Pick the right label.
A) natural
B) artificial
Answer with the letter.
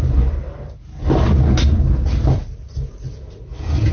A